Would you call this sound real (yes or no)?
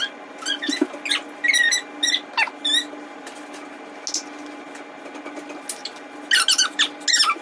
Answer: yes